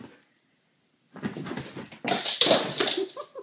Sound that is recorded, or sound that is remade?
recorded